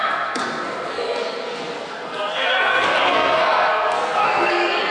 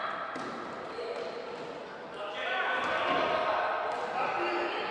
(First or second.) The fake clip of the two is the first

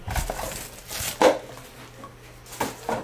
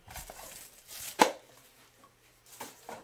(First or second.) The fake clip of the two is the second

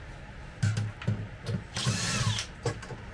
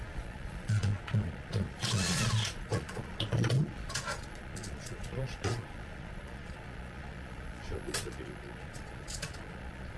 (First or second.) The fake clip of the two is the second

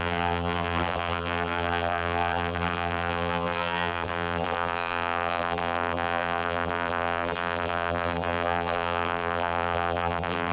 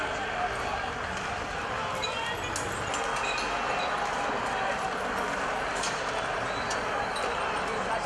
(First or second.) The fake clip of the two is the first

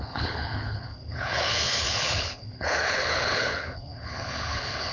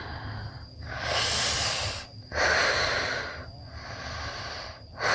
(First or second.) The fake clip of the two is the first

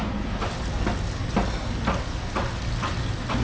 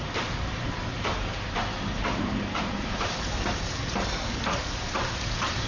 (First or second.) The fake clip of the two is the second